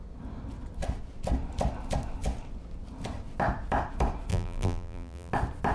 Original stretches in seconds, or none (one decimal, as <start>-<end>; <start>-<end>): 0.0-4.3; 5.3-5.7